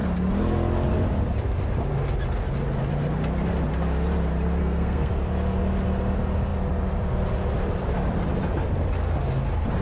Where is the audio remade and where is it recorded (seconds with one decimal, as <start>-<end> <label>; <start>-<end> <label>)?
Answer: 0.0-4.6 recorded; 4.6-5.1 remade; 5.1-9.8 recorded